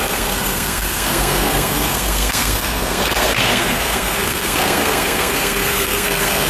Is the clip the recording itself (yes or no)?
no